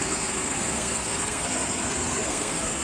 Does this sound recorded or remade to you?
remade